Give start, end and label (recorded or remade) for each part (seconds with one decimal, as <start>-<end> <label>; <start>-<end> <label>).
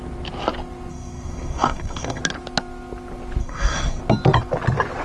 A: 0.0-0.9 recorded; 0.9-2.2 remade; 2.2-3.4 recorded; 3.4-4.0 remade; 4.0-5.0 recorded